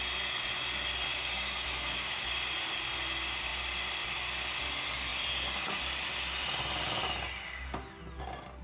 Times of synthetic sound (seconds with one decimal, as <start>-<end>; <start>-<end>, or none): 1.1-2.3